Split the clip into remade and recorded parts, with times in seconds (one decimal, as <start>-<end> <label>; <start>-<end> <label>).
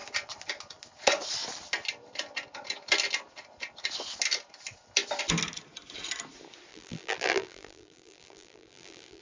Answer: 0.0-6.7 recorded; 6.7-9.2 remade